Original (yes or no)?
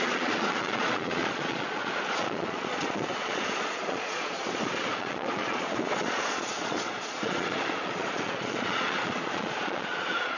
no